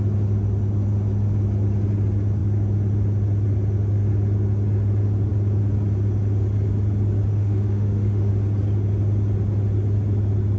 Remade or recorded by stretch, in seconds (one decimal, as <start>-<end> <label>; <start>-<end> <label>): 0.0-7.3 recorded; 7.3-8.3 remade; 8.3-10.6 recorded